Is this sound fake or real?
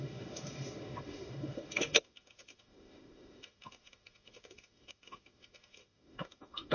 fake